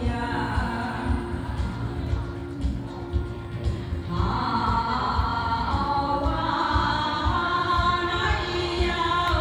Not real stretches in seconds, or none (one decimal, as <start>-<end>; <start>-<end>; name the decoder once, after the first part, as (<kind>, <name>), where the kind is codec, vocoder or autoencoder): 2.4-4.7 (vocoder, BigVGAN v2); 5.3-9.4